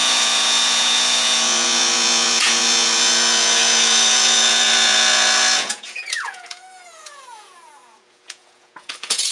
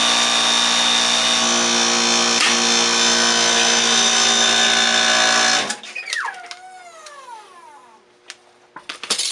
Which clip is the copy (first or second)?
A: first